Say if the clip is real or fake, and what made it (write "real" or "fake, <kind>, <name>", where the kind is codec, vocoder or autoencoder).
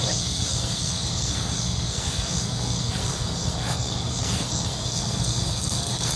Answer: fake, codec, SNAC